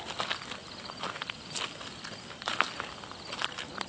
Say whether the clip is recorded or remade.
recorded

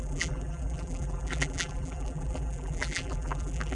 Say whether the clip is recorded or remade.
remade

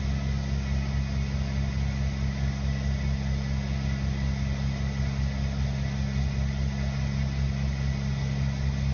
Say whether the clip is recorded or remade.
recorded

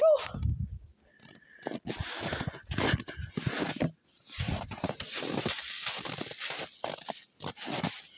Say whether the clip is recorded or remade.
recorded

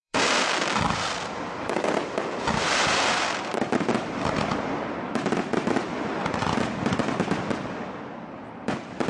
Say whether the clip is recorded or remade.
remade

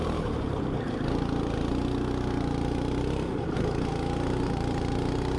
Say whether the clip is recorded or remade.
recorded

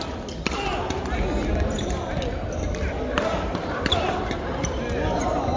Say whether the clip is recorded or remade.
recorded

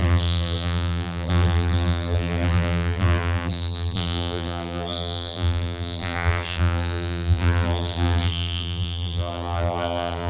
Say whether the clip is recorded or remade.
remade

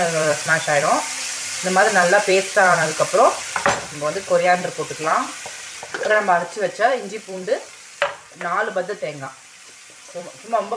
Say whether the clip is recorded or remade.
remade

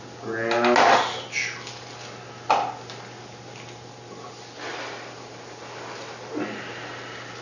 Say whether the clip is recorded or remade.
recorded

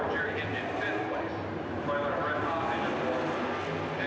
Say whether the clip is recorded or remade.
recorded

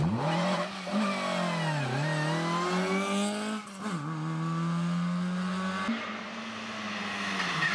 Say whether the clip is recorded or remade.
recorded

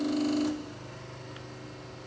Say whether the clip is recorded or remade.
recorded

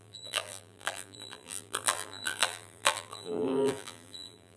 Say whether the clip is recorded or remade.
remade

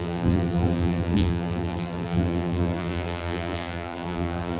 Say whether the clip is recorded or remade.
remade